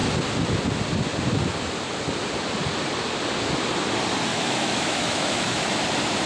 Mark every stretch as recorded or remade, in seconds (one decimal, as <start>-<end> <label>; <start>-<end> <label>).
0.0-4.3 recorded; 4.3-5.8 remade; 5.8-6.3 recorded